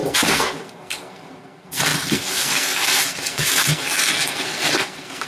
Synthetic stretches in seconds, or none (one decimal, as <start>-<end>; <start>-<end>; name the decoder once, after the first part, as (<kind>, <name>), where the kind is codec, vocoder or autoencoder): 0.0-5.3 (codec, SNAC)